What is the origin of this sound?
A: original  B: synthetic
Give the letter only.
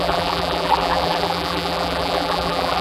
B